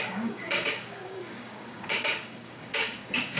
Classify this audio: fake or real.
fake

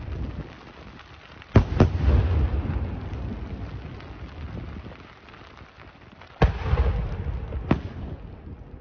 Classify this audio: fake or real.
real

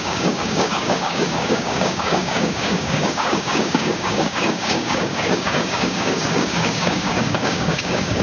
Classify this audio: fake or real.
fake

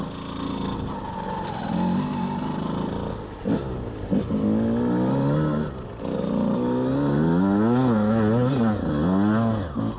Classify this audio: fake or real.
real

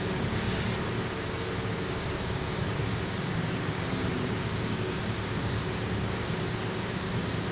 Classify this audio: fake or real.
fake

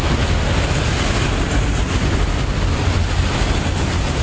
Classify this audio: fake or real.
real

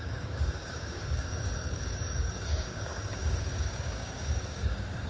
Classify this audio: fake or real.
fake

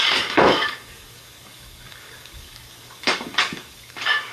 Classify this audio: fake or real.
fake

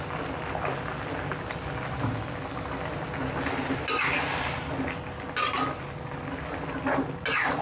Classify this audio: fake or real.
real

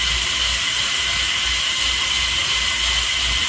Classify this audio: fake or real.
real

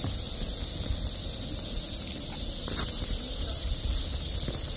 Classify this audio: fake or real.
real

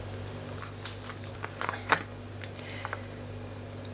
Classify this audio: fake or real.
real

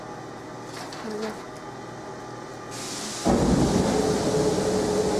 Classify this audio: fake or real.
real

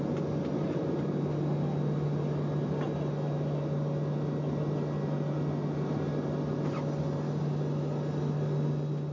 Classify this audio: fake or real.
real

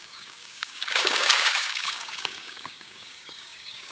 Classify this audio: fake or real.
fake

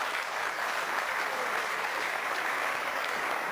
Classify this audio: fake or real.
fake